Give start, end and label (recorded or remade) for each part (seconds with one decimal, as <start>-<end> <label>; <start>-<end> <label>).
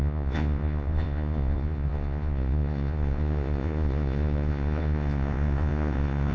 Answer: 0.0-6.3 remade